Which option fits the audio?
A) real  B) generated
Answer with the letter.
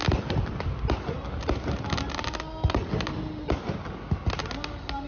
A